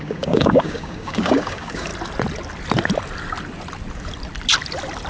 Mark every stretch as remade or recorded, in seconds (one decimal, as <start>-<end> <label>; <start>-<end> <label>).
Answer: 0.0-1.9 remade; 1.9-5.1 recorded